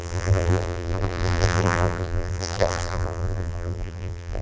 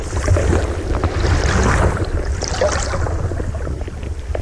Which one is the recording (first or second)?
second